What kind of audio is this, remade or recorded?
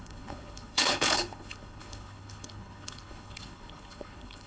remade